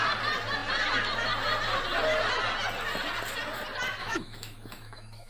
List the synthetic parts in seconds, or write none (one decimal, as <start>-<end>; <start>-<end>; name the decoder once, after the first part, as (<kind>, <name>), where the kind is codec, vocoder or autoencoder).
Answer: 4.0-5.3 (autoencoder, DAC-VAE)

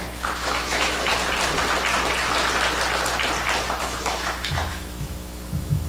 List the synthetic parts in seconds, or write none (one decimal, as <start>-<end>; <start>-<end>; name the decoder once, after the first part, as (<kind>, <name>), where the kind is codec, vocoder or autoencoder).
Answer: 0.0-1.1 (autoencoder, DAC-VAE); 3.8-5.9

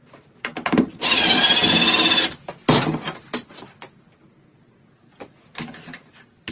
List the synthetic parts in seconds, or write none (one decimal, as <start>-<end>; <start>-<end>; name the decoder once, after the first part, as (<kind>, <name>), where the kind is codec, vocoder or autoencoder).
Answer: none